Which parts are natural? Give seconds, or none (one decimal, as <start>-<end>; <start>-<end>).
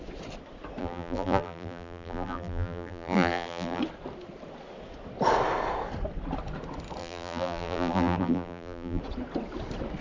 0.0-0.8; 3.8-7.0; 9.0-10.0